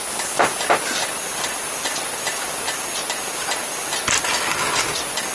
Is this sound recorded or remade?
recorded